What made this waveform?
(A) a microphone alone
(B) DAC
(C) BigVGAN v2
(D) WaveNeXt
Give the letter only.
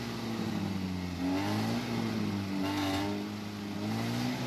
A